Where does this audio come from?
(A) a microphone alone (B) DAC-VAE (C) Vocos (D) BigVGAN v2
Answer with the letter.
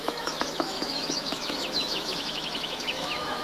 B